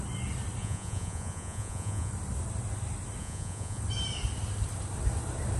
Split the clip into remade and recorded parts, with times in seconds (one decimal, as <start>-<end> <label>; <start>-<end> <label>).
0.0-0.6 recorded; 0.6-2.1 remade; 2.1-3.2 recorded; 3.2-3.8 remade; 3.8-5.6 recorded